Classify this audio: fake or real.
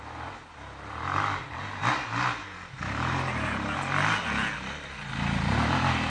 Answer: real